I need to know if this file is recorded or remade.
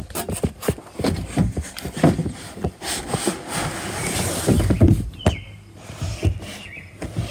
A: recorded